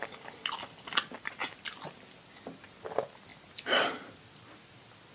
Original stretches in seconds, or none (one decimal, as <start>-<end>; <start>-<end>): 0.0-5.1